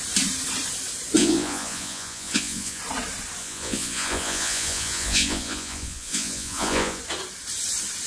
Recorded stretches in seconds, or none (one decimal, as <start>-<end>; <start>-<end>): 0.0-1.2; 2.8-3.4; 7.0-8.1